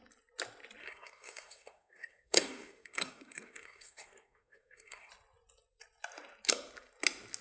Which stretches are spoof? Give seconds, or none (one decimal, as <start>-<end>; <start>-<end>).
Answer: 0.8-5.1